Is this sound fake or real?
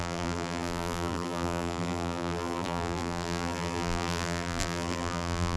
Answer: fake